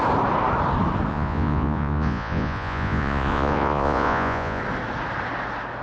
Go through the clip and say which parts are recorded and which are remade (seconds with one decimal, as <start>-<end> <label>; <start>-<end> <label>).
0.0-1.1 recorded; 1.1-4.6 remade; 4.6-5.8 recorded